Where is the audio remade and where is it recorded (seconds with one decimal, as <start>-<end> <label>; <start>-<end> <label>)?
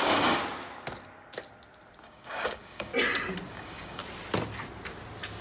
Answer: 0.0-0.4 remade; 0.4-2.0 recorded; 2.0-2.9 remade; 2.9-3.5 recorded; 3.5-4.0 remade; 4.0-5.4 recorded